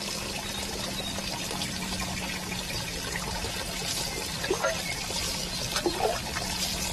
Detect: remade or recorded recorded